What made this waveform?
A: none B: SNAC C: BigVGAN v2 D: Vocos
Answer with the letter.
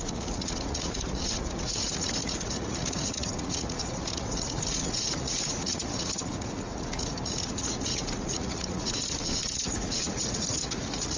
D